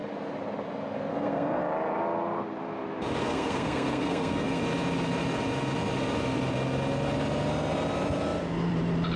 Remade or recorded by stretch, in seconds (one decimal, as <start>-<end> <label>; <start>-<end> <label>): 0.0-1.1 recorded; 1.1-1.6 remade; 1.6-3.2 recorded; 3.2-4.6 remade; 4.6-9.2 recorded

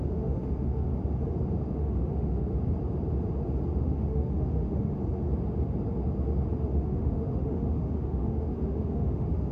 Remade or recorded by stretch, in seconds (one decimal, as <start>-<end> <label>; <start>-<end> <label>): 0.0-0.9 remade; 0.9-1.5 recorded; 1.5-2.5 remade; 2.5-3.8 recorded; 3.8-5.0 remade; 5.0-6.6 recorded; 6.6-9.5 remade

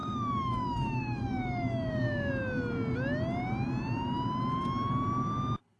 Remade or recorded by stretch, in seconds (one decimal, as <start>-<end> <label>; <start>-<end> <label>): 0.0-2.3 remade; 2.3-5.8 recorded